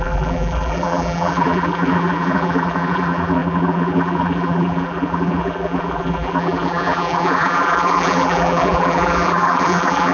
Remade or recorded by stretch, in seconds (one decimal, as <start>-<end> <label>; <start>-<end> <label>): 0.0-10.1 remade